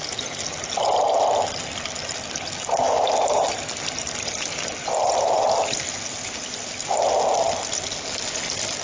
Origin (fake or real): real